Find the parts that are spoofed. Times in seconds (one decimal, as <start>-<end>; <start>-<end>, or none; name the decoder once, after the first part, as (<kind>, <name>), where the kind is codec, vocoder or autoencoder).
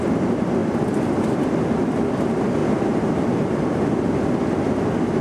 none